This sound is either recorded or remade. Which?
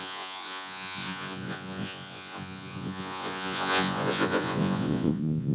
remade